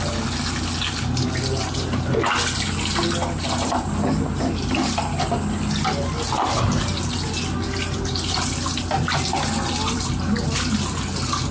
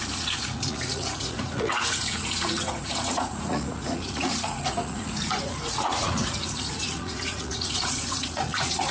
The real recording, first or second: first